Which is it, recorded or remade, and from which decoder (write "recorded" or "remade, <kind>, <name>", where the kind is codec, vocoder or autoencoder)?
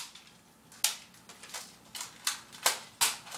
recorded